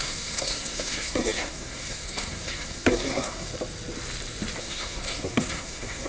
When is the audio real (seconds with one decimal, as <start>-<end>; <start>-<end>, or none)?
3.5-4.6